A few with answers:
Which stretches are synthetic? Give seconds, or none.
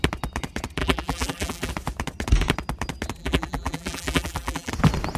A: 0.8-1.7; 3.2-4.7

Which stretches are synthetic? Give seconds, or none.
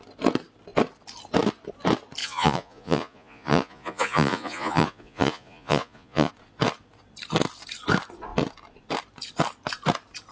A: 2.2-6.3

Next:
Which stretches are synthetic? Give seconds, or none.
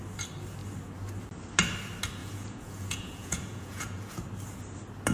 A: 2.2-4.2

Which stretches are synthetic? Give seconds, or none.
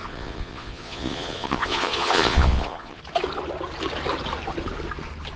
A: 0.0-3.0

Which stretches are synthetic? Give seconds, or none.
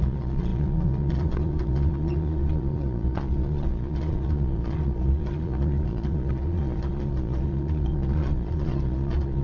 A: 0.0-9.4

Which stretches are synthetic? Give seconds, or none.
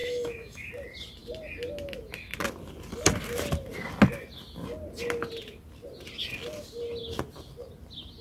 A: 0.0-0.7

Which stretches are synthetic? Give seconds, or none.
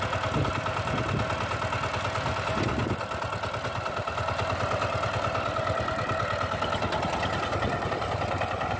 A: none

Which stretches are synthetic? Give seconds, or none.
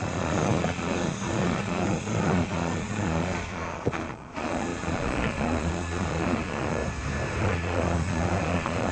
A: 0.0-6.8; 7.4-8.9